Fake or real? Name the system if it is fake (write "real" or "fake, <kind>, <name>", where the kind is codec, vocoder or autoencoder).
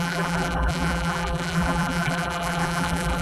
fake, vocoder, BigVGAN v2